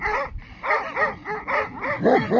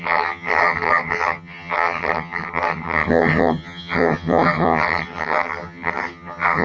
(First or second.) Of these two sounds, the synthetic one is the second